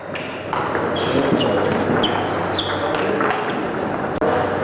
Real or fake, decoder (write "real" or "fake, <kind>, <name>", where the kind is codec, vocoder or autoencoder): real